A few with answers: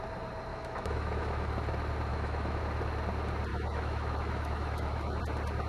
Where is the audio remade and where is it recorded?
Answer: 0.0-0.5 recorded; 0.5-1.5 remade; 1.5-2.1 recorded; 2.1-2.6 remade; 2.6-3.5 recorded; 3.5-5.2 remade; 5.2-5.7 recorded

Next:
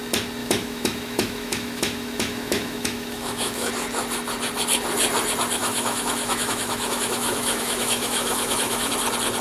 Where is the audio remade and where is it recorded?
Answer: 0.0-0.4 recorded; 0.4-3.7 remade; 3.7-5.6 recorded; 5.6-8.9 remade; 8.9-9.4 recorded

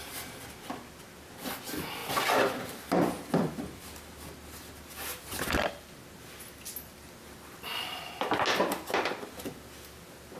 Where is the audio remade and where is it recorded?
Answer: 0.0-10.4 recorded

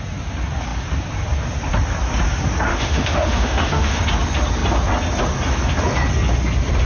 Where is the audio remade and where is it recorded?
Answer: 0.0-2.7 recorded; 2.7-4.0 remade; 4.0-6.9 recorded

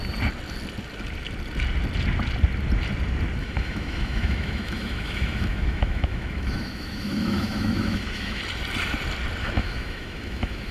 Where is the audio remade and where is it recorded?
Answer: 0.0-3.4 recorded; 3.4-8.4 remade; 8.4-9.4 recorded; 9.4-10.7 remade

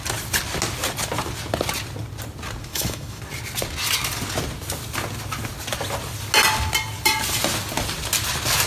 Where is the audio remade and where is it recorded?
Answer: 0.0-2.7 recorded; 2.7-3.2 remade; 3.2-8.7 recorded